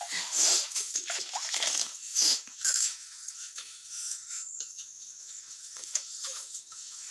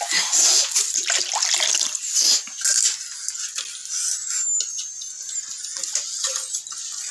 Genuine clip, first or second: second